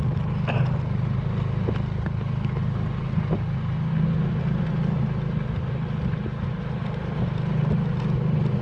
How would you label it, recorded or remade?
recorded